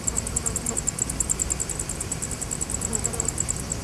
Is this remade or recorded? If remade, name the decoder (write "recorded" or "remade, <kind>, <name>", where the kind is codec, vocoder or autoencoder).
recorded